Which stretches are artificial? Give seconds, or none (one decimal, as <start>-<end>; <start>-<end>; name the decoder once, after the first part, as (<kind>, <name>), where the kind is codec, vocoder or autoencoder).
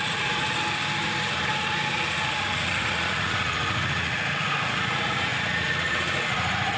0.0-0.6 (vocoder, Vocos); 1.5-6.8